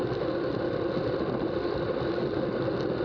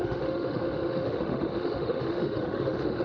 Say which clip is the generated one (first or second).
second